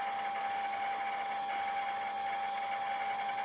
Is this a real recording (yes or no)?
yes